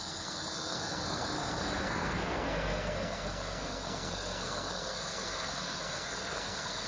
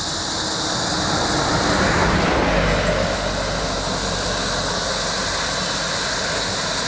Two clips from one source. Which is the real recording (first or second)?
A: second